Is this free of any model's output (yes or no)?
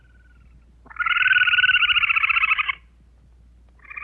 yes